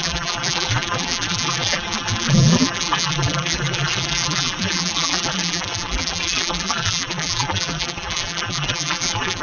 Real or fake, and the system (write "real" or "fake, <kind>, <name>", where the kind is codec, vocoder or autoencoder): fake, vocoder, BigVGAN v2